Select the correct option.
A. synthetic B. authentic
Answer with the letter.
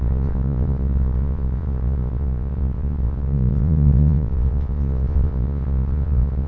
A